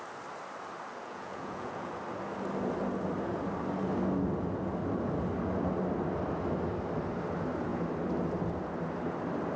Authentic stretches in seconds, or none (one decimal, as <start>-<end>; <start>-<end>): 0.0-1.0; 1.9-9.6